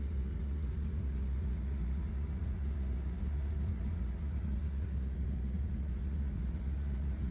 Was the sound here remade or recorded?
remade